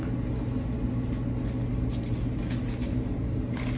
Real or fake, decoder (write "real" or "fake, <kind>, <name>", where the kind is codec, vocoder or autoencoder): real